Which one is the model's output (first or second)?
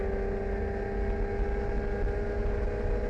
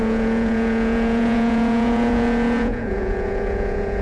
second